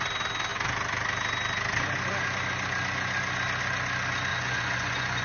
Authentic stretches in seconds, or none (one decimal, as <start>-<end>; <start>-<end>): 0.0-4.3